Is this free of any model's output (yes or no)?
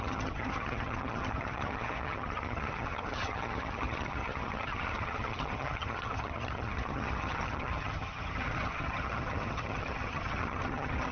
no